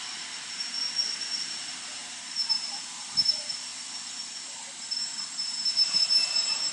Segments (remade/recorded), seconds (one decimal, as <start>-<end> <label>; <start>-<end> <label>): 0.0-3.7 remade; 3.7-4.5 recorded; 4.5-6.7 remade